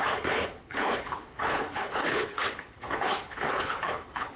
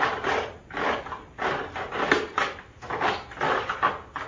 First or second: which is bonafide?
second